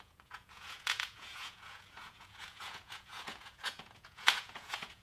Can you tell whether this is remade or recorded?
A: remade